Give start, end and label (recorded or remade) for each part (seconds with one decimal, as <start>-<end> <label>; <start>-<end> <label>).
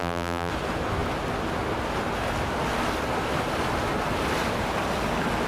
0.0-0.5 remade; 0.5-5.5 recorded